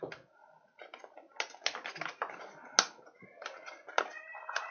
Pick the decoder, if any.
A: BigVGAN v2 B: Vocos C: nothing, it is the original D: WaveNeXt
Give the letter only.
C